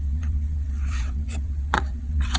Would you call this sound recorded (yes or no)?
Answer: no